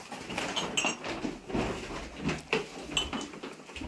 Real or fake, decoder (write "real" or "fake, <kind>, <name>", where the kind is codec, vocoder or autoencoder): real